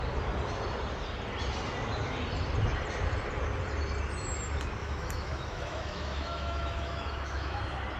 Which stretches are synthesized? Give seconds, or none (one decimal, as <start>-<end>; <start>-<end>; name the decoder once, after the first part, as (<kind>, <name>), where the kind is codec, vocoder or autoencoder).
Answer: 4.8-7.6 (autoencoder, DAC-VAE)